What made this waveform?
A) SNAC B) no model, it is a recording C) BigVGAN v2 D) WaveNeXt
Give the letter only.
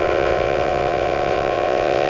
D